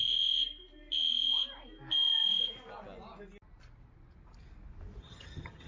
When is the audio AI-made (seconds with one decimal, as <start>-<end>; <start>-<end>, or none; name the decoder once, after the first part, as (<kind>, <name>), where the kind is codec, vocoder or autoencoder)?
5.0-5.7 (vocoder, HiFi-GAN)